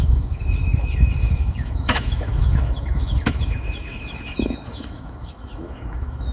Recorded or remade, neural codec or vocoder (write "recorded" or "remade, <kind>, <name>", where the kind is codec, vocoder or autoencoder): remade, autoencoder, DAC-VAE